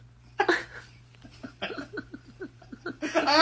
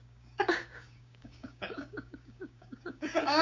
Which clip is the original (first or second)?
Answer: first